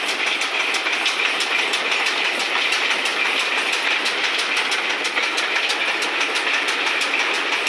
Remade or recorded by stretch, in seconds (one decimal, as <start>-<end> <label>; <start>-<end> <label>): 0.0-7.7 recorded